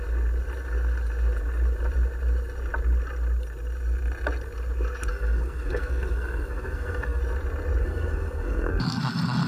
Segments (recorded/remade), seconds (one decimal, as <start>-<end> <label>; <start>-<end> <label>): 0.0-5.1 recorded; 5.1-7.2 remade; 7.2-7.8 recorded; 7.8-9.0 remade; 9.0-9.5 recorded